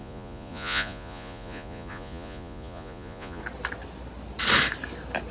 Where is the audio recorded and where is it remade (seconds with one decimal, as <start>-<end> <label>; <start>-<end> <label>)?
0.0-3.4 remade; 3.4-5.3 recorded